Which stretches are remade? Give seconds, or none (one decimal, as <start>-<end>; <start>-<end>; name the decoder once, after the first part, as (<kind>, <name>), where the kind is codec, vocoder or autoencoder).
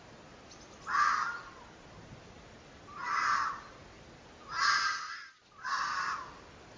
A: none